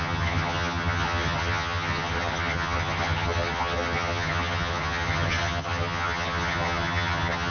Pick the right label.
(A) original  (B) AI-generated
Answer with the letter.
B